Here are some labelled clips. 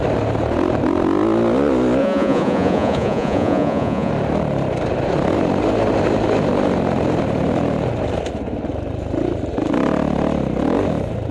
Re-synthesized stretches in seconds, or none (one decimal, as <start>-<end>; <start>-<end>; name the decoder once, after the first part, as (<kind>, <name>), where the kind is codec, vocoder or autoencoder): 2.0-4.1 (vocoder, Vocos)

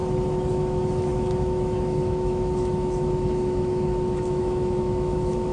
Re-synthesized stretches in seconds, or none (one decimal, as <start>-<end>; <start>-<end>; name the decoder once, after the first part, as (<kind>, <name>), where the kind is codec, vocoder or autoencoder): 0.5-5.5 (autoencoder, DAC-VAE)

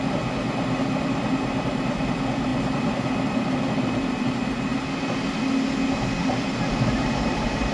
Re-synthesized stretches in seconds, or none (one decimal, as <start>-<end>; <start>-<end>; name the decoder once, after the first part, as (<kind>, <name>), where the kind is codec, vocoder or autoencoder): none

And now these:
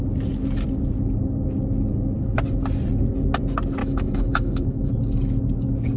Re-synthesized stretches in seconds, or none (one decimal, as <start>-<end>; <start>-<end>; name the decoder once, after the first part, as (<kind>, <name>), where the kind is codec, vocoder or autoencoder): 3.8-4.9 (autoencoder, DAC-VAE)

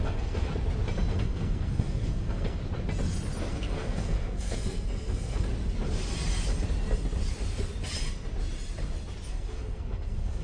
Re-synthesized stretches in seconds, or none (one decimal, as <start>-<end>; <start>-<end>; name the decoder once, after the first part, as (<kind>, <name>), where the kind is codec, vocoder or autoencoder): 0.0-0.5 (codec, SNAC); 1.1-2.6; 3.5-5.5; 9.3-10.4

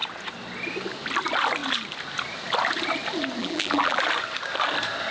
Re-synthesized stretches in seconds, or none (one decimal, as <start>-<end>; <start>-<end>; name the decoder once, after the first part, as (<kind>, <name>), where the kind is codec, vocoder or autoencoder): 3.4-4.0 (vocoder, BigVGAN v2)

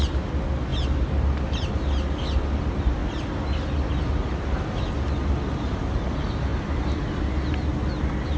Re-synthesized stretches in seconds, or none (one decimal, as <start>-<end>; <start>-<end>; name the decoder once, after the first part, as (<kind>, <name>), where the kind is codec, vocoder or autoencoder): none